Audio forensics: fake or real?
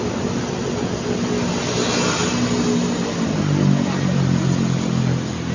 real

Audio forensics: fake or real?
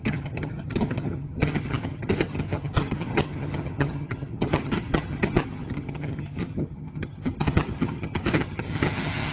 fake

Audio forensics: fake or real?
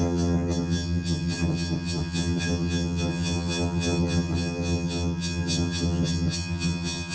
fake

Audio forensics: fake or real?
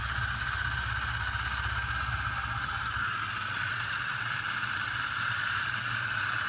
real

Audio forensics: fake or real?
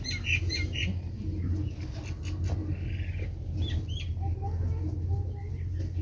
real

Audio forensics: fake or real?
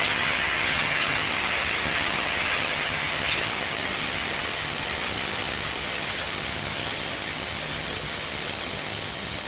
fake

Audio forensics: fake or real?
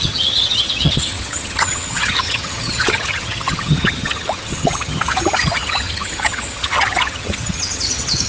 fake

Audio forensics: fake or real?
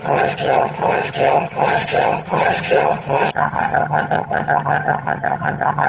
fake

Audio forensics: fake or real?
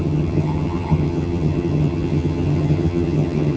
fake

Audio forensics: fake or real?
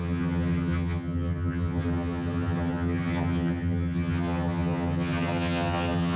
fake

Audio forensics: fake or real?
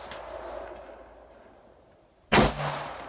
real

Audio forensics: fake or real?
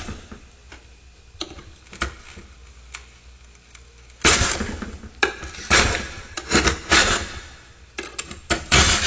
real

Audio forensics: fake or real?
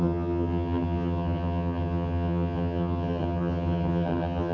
fake